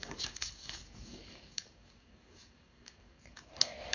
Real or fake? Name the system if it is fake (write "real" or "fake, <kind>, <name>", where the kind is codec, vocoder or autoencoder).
fake, codec, DAC